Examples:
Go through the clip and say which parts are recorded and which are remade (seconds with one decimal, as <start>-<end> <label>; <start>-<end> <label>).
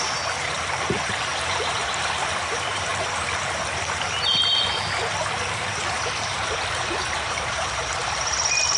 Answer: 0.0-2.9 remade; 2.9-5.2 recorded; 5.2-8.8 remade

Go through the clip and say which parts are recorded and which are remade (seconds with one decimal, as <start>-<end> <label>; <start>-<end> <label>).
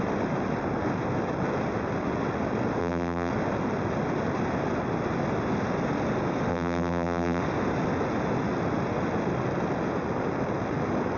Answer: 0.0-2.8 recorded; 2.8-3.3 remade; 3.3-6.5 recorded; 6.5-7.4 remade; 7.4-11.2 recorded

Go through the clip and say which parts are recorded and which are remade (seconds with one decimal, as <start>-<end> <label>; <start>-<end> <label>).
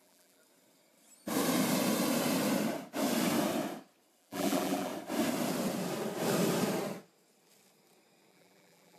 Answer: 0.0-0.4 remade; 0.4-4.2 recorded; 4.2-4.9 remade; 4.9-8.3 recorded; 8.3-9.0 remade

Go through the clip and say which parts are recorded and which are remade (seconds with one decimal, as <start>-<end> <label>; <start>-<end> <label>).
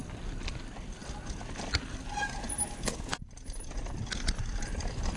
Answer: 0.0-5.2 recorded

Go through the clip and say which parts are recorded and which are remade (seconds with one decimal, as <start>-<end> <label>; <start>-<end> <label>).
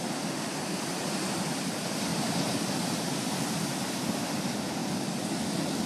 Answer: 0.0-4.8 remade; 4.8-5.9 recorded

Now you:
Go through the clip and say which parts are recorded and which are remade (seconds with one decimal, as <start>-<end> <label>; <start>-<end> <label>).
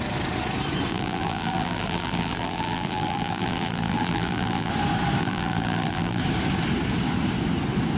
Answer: 0.0-0.9 recorded; 0.9-4.7 remade; 4.7-5.2 recorded; 5.2-6.2 remade; 6.2-8.0 recorded